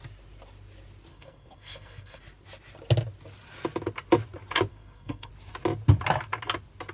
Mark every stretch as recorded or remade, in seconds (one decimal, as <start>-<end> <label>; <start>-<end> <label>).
0.0-1.1 recorded; 1.1-2.2 remade; 2.2-4.7 recorded; 4.7-5.3 remade; 5.3-6.9 recorded

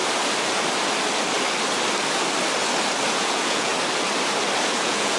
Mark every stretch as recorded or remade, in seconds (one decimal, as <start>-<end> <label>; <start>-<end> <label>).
0.0-3.1 recorded; 3.1-3.7 remade; 3.7-4.7 recorded; 4.7-5.2 remade

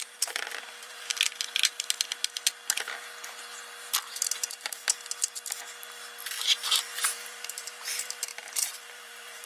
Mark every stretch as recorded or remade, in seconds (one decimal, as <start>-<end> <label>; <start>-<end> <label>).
0.0-1.1 remade; 1.1-4.0 recorded; 4.0-4.8 remade; 4.8-6.4 recorded; 6.4-9.5 remade

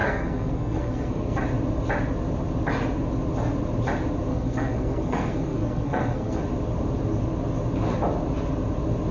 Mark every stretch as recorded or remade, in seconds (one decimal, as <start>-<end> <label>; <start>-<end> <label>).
0.0-1.4 remade; 1.4-4.3 recorded; 4.3-6.4 remade; 6.4-9.1 recorded

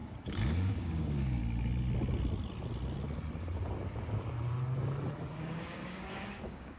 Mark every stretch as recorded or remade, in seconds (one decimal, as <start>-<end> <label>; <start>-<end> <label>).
0.0-1.4 remade; 1.4-5.3 recorded; 5.3-6.8 remade

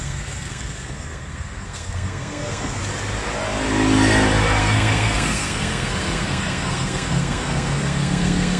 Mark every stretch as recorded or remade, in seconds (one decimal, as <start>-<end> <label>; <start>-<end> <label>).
0.0-2.8 remade; 2.8-4.6 recorded; 4.6-8.6 remade

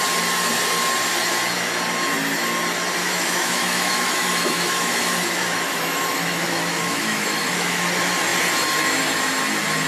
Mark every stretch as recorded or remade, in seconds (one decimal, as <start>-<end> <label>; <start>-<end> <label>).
0.0-3.0 recorded; 3.0-7.8 remade; 7.8-9.9 recorded

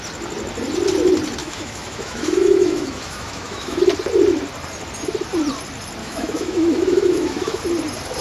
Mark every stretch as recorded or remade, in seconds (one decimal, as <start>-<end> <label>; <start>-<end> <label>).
0.0-1.4 recorded; 1.4-3.8 remade; 3.8-6.0 recorded; 6.0-7.6 remade; 7.6-8.2 recorded